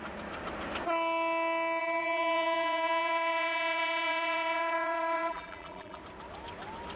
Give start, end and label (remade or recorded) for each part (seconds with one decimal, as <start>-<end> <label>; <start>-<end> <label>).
0.0-1.8 recorded; 1.8-6.0 remade; 6.0-7.0 recorded